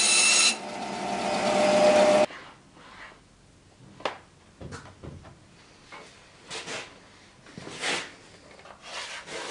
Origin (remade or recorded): recorded